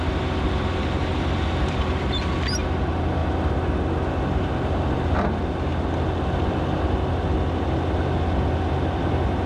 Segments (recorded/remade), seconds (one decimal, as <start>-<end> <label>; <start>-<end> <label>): 0.0-9.5 recorded